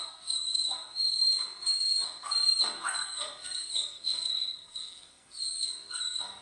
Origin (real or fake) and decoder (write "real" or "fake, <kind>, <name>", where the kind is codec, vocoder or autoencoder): fake, codec, SNAC